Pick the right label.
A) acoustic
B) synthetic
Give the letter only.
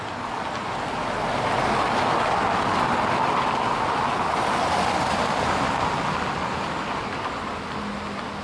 A